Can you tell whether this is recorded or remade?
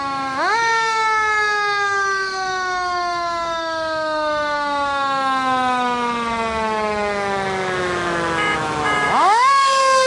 remade